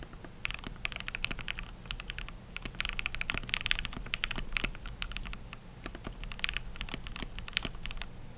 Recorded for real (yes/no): yes